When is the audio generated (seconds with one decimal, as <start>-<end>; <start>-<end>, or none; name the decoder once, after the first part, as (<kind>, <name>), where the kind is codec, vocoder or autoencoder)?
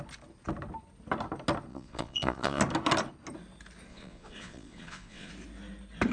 1.7-2.6 (vocoder, Vocos); 3.9-5.3